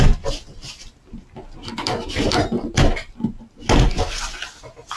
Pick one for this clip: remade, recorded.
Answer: recorded